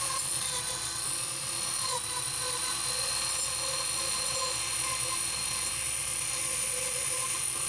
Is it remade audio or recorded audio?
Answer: remade